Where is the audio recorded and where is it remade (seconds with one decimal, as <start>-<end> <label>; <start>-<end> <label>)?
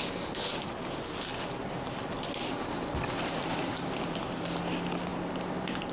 0.0-5.9 recorded